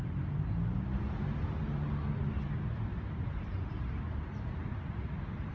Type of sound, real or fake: real